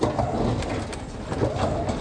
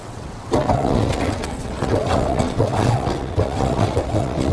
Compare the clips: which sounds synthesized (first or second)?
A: second